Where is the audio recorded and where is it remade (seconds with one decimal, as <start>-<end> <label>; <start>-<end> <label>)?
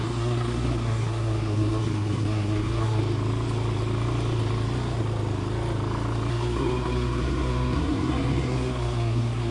0.0-3.0 remade; 3.0-6.3 recorded; 6.3-9.5 remade